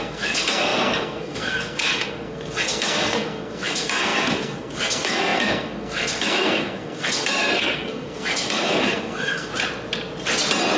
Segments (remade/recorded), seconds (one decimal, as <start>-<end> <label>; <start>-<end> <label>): 0.0-9.5 remade; 9.5-10.8 recorded